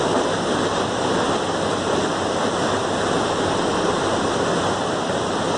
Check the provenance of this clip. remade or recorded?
recorded